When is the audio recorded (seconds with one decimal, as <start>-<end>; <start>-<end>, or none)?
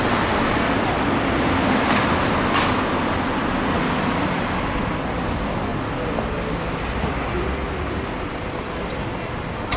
0.0-9.8